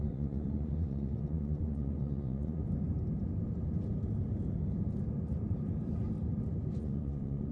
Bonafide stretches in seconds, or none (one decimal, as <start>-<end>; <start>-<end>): 2.6-6.8

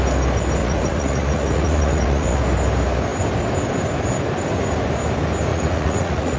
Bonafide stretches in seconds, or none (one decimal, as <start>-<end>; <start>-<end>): 0.0-0.6; 2.4-5.5

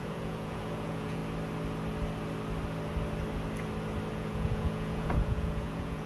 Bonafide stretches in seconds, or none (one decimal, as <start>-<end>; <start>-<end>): 1.2-4.1